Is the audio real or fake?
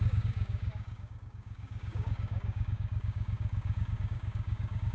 fake